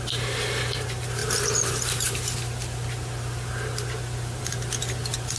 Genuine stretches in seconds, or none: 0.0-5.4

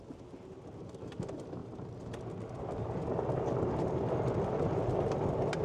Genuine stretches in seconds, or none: 0.0-5.6

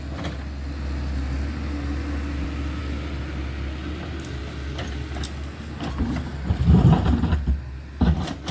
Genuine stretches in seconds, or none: 0.0-8.5

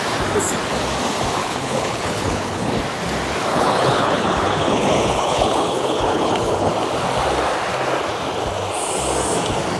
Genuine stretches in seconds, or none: 0.0-1.4; 2.7-3.5; 6.7-9.8